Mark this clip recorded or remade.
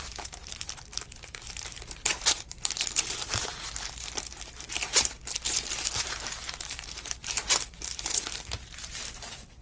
remade